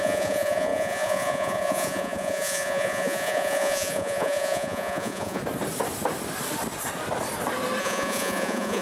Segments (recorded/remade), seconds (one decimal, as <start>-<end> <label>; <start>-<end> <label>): 0.0-5.4 remade; 5.4-7.8 recorded; 7.8-8.8 remade